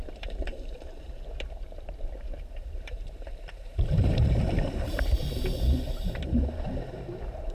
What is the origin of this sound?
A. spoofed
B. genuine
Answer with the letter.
A